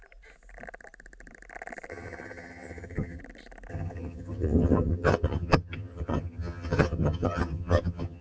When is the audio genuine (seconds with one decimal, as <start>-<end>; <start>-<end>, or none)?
0.0-1.9; 3.2-3.7